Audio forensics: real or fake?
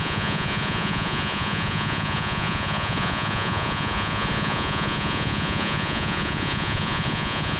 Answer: fake